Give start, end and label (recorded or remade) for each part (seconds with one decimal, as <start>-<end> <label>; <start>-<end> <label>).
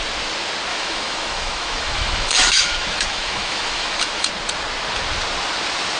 0.0-0.7 recorded; 0.7-4.3 remade; 4.3-6.0 recorded